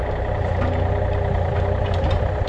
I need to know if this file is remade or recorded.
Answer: recorded